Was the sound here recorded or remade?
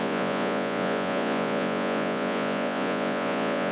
remade